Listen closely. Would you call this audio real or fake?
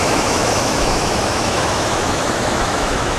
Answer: fake